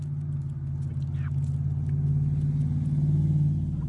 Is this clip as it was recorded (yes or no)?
yes